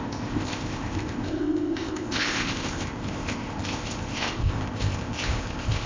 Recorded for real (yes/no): no